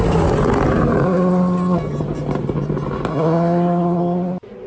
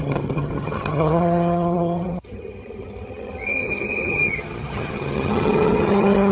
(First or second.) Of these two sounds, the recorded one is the first